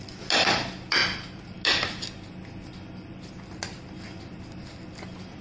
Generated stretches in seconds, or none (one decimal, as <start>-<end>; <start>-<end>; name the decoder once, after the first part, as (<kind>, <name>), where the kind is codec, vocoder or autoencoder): none